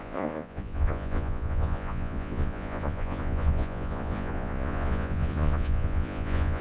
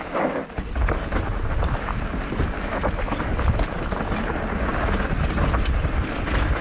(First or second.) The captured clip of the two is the second